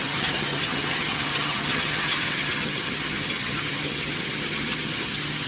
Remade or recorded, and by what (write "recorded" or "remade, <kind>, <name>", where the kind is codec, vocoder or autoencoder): remade, vocoder, HiFi-GAN